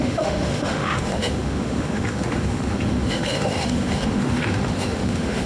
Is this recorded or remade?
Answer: remade